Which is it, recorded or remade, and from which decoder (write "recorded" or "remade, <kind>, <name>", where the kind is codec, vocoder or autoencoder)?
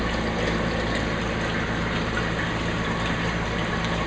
recorded